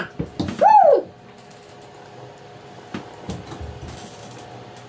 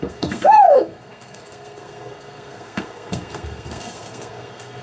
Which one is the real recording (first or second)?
first